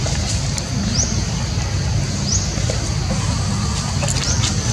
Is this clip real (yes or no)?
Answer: yes